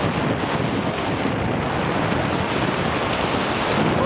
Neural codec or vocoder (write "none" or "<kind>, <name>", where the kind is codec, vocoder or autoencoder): none